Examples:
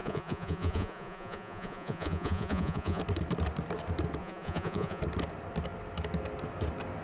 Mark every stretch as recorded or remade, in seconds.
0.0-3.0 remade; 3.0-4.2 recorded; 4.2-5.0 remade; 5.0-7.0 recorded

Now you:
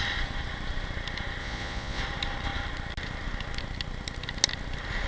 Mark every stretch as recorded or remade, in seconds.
0.0-1.4 recorded; 1.4-2.0 remade; 2.0-5.1 recorded

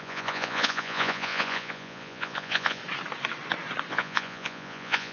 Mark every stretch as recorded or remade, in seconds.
0.0-2.8 remade; 2.8-3.9 recorded; 3.9-5.1 remade

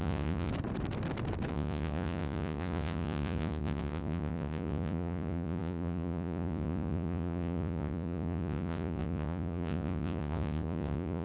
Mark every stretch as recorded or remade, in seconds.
0.0-0.5 remade; 0.5-1.5 recorded; 1.5-11.2 remade

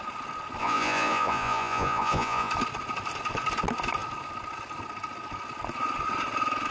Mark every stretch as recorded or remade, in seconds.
0.0-0.6 recorded; 0.6-2.5 remade; 2.5-6.7 recorded

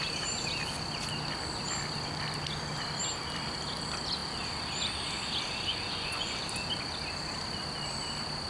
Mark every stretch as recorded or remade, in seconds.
0.0-5.7 recorded; 5.7-6.3 remade; 6.3-8.5 recorded

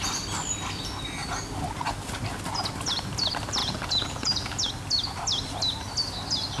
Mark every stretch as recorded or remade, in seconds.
0.0-3.6 recorded; 3.6-4.7 remade; 4.7-6.6 recorded

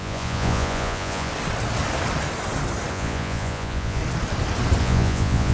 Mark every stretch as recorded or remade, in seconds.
0.0-1.3 remade; 1.3-2.9 recorded; 2.9-4.0 remade; 4.0-4.8 recorded; 4.8-5.5 remade